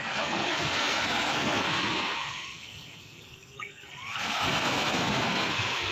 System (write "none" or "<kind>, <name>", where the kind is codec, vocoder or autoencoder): codec, SNAC